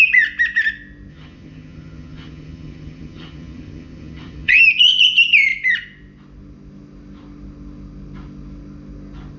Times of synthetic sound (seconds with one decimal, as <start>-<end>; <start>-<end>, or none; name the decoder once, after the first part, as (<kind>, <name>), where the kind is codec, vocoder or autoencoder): 1.1-4.6 (vocoder, HiFi-GAN)